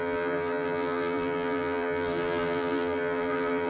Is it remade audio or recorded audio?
remade